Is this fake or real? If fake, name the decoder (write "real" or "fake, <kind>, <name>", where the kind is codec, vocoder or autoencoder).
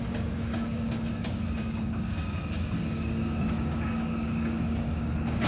fake, codec, DAC